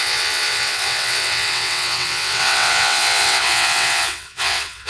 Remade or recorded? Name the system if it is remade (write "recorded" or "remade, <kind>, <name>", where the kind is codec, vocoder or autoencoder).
remade, vocoder, WaveNeXt